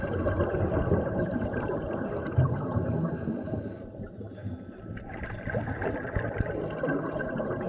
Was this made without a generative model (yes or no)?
no